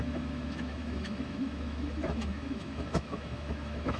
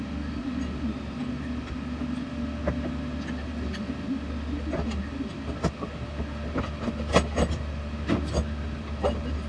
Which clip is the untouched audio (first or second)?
second